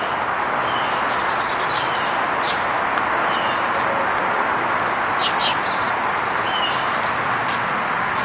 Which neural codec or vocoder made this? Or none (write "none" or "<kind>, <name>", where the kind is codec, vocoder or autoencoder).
none